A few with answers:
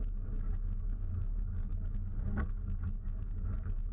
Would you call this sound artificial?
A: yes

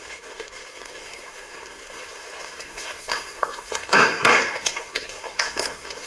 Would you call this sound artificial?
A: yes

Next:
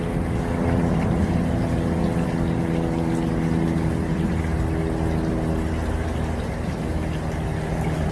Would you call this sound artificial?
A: no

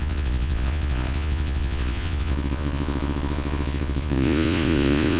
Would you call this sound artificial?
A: yes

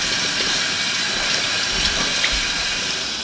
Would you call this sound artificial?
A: no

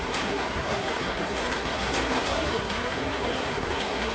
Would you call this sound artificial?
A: yes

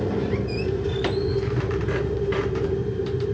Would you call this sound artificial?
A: yes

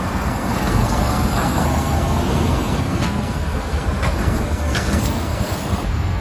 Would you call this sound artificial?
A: yes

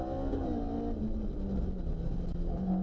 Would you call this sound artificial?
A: no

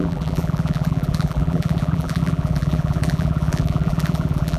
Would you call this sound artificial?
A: yes